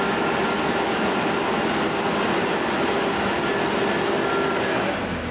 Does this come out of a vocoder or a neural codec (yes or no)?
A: no